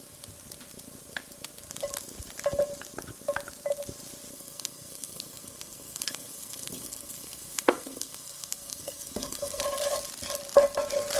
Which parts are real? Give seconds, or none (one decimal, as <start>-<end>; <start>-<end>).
0.0-4.3; 9.6-11.2